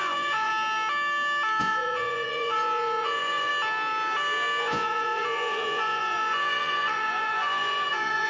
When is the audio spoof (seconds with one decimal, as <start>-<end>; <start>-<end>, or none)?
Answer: 0.0-0.5; 1.6-3.5; 4.6-8.3